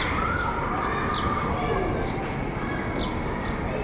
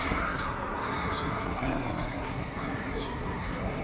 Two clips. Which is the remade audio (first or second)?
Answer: second